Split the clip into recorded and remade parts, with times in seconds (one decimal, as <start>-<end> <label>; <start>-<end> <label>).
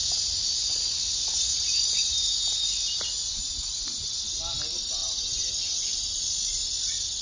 0.0-4.2 remade; 4.2-5.0 recorded; 5.0-6.2 remade; 6.2-7.2 recorded